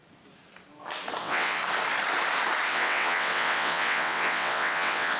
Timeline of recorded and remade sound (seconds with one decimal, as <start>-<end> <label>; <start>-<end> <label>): 0.0-1.2 recorded; 1.2-1.6 remade; 1.6-2.7 recorded; 2.7-5.2 remade